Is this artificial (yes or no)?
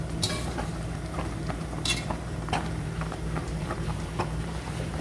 yes